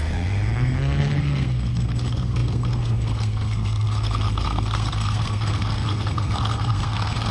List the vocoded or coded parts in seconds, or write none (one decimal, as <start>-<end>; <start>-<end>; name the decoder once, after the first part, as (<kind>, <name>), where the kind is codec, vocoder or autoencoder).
0.0-7.3 (codec, SNAC)